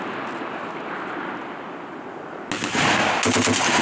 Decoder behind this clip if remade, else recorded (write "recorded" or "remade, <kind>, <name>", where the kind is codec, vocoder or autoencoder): recorded